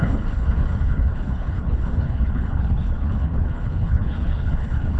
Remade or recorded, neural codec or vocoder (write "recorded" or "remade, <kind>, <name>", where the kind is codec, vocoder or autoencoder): remade, codec, HILCodec